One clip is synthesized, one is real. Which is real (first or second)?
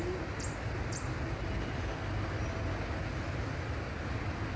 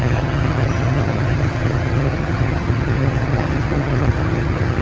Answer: first